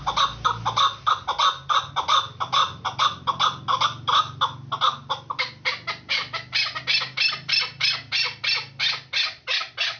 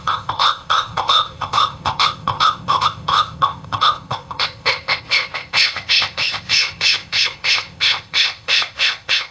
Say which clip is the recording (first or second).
first